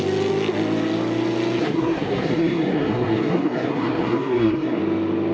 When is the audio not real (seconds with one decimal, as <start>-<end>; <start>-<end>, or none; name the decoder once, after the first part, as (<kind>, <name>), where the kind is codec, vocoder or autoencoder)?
1.6-4.8 (codec, SNAC)